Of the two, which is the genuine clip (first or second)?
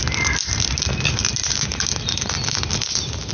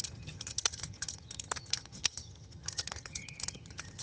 first